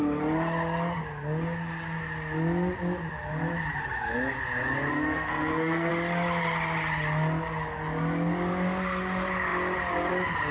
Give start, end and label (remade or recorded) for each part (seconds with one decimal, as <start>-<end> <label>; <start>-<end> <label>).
0.0-4.9 recorded; 4.9-5.9 remade; 5.9-10.5 recorded